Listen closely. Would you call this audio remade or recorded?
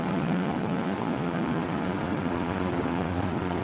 remade